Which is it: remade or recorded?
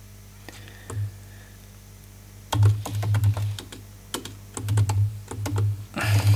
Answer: recorded